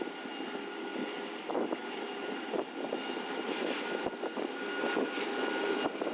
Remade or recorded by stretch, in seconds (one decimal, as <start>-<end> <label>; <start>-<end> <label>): 0.0-6.1 recorded